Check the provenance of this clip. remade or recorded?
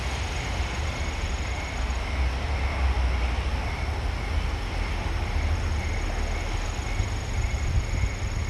recorded